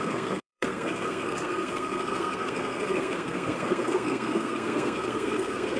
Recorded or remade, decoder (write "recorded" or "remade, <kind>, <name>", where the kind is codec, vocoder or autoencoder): remade, codec, SNAC